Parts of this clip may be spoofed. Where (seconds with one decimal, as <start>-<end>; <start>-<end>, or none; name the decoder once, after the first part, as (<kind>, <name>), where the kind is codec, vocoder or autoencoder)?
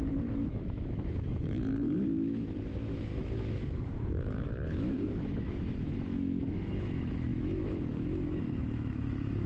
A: 0.0-9.5 (autoencoder, DAC-VAE)